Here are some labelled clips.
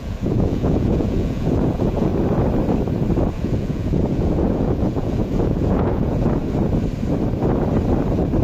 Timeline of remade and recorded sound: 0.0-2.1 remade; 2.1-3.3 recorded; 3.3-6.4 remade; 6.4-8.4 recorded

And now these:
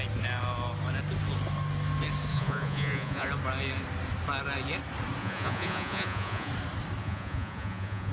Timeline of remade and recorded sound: 0.0-2.3 recorded; 2.3-3.3 remade; 3.3-5.2 recorded; 5.2-6.5 remade; 6.5-7.0 recorded; 7.0-8.1 remade

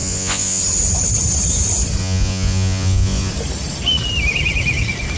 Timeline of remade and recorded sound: 0.0-0.6 remade; 0.6-2.0 recorded; 2.0-3.3 remade; 3.3-5.2 recorded